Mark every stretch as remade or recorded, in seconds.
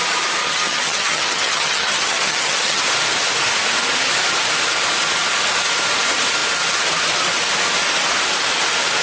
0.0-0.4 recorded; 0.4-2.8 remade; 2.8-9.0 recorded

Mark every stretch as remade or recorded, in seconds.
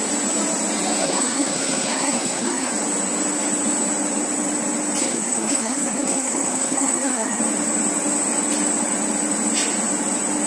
0.0-1.0 recorded; 1.0-2.7 remade; 2.7-5.0 recorded; 5.0-7.4 remade; 7.4-10.5 recorded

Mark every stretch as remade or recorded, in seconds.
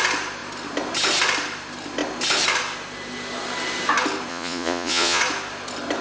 0.0-4.3 recorded; 4.3-5.2 remade; 5.2-6.0 recorded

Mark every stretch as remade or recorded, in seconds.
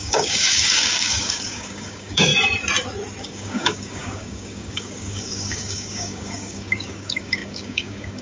0.0-2.3 remade; 2.3-3.2 recorded; 3.2-8.2 remade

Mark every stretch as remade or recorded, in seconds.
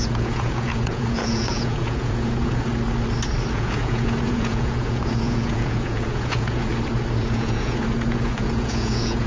0.0-2.7 remade; 2.7-3.5 recorded; 3.5-6.7 remade; 6.7-7.2 recorded; 7.2-9.3 remade